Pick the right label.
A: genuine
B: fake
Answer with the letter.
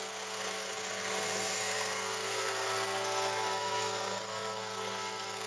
B